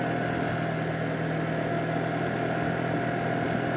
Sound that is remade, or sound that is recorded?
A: recorded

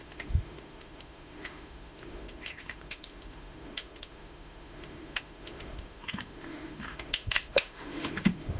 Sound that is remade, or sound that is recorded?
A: remade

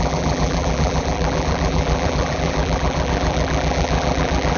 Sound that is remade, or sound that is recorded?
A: remade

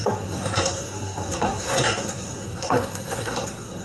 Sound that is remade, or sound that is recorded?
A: remade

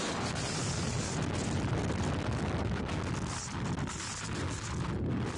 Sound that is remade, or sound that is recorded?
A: recorded